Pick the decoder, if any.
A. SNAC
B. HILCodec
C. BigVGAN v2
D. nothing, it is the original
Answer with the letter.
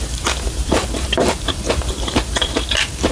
C